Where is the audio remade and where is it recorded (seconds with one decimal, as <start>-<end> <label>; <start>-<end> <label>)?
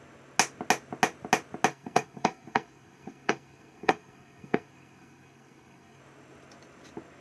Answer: 0.0-1.7 recorded; 1.7-6.0 remade; 6.0-7.2 recorded